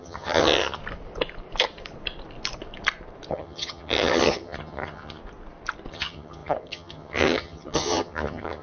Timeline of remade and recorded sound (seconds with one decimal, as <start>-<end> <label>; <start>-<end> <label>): 0.0-0.8 remade; 0.8-3.3 recorded; 3.3-5.2 remade; 5.2-5.9 recorded; 5.9-8.6 remade